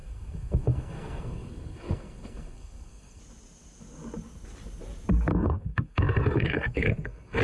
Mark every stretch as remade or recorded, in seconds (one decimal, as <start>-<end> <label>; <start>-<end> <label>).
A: 0.0-3.2 remade; 3.2-5.3 recorded; 5.3-7.4 remade